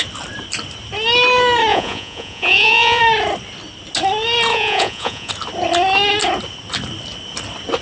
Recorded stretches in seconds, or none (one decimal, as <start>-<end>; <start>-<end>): 0.0-1.7; 3.0-4.5; 5.3-7.8